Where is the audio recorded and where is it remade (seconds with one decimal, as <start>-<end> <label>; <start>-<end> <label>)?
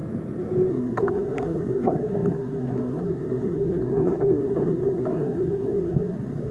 0.0-0.7 recorded; 0.7-6.5 remade